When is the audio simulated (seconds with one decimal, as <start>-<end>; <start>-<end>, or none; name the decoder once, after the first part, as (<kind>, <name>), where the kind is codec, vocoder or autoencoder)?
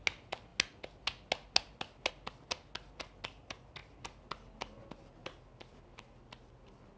none